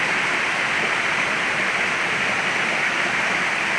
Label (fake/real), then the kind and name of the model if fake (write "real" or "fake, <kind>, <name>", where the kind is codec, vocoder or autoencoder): real